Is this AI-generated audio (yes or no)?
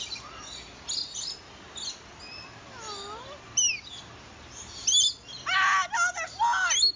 no